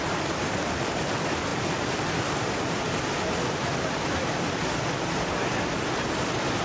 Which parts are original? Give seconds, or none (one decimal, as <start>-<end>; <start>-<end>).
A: 0.0-1.5; 2.6-6.6